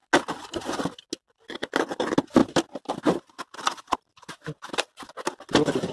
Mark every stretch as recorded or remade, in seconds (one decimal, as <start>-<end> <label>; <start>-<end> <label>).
0.0-5.9 recorded